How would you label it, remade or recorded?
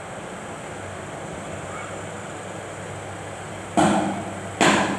recorded